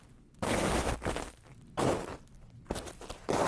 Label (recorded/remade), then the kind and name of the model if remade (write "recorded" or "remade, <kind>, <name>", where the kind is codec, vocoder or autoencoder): recorded